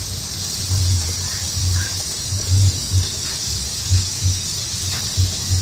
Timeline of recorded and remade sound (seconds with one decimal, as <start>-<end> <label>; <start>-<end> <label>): 0.0-1.6 recorded; 1.6-5.0 remade; 5.0-5.6 recorded